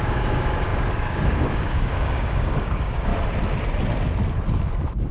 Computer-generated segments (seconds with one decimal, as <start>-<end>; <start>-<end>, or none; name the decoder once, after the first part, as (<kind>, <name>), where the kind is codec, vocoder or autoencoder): 0.0-3.1 (codec, DAC)